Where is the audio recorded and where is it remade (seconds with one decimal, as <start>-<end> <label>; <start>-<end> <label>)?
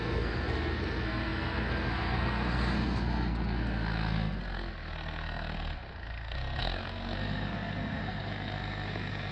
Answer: 0.0-9.3 remade